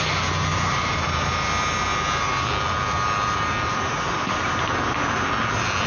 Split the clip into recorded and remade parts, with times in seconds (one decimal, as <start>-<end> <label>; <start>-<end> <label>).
0.0-0.5 recorded; 0.5-1.3 remade; 1.3-5.9 recorded